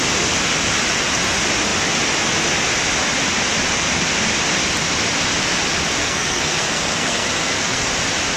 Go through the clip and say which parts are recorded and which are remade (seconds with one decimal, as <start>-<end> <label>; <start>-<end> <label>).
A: 0.0-6.0 recorded; 6.0-7.9 remade; 7.9-8.4 recorded